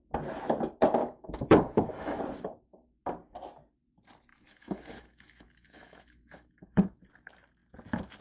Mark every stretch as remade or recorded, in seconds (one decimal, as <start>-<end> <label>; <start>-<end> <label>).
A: 0.0-1.0 recorded; 1.0-2.2 remade; 2.2-4.3 recorded; 4.3-7.0 remade; 7.0-8.2 recorded